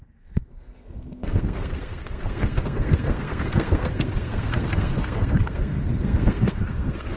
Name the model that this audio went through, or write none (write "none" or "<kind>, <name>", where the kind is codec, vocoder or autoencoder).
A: codec, SNAC